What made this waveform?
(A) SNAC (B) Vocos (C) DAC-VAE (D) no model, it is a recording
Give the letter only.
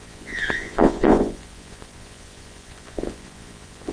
B